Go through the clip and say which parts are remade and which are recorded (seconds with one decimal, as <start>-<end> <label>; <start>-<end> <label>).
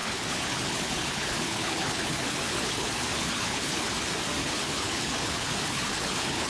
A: 0.0-3.9 remade; 3.9-4.4 recorded; 4.4-6.5 remade